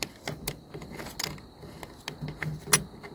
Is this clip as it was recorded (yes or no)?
yes